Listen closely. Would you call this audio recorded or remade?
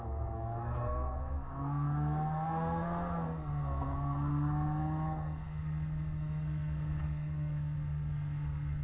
remade